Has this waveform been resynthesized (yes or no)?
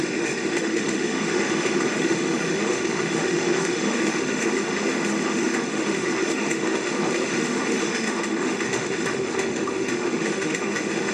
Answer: yes